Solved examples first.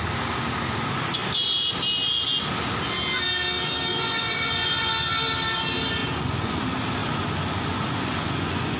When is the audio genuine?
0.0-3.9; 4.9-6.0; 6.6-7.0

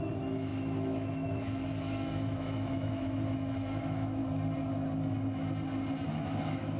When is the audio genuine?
4.2-6.1